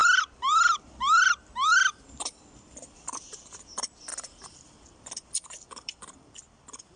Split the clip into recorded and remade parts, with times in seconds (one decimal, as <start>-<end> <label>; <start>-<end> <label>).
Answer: 0.0-7.0 remade